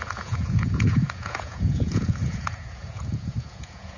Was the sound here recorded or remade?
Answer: remade